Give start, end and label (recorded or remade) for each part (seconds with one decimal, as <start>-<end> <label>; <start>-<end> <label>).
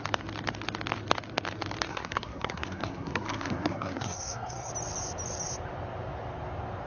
0.0-1.9 recorded; 1.9-4.7 remade; 4.7-6.9 recorded